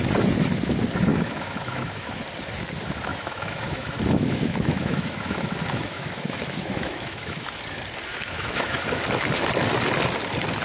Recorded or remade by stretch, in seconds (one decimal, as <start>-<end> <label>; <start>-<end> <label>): 0.0-1.1 recorded; 1.1-2.2 remade; 2.2-3.1 recorded; 3.1-7.6 remade; 7.6-8.1 recorded; 8.1-9.0 remade; 9.0-10.6 recorded